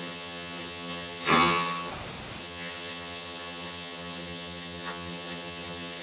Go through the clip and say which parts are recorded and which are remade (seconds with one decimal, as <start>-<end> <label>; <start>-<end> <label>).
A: 0.0-1.9 remade; 1.9-2.4 recorded; 2.4-6.0 remade